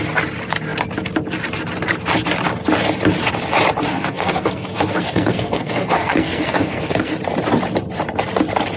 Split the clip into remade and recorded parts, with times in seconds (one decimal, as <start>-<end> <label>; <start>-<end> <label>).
0.0-3.9 recorded; 3.9-7.1 remade; 7.1-8.8 recorded